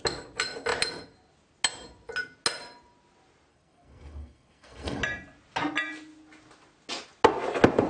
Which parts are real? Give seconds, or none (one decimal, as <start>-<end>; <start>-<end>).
0.0-3.5; 5.0-7.9

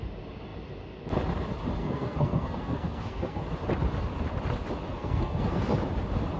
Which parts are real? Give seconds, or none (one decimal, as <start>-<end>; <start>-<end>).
0.0-1.8; 3.4-4.9; 5.6-6.4